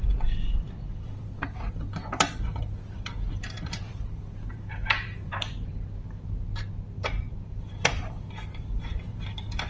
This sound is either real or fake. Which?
fake